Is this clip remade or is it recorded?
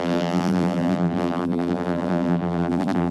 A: remade